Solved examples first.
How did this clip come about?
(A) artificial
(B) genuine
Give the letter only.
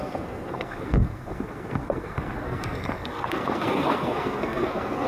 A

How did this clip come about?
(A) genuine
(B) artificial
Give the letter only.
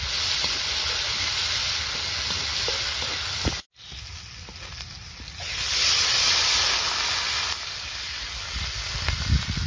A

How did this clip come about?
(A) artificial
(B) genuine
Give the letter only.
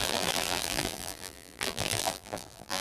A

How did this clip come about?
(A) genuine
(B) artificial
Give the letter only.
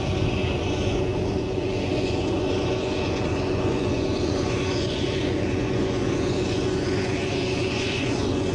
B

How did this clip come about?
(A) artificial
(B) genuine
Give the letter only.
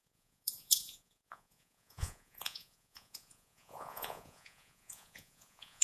A